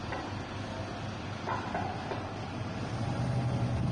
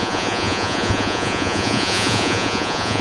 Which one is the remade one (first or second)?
second